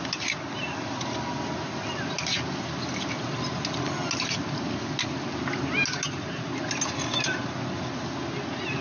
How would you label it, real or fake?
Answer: real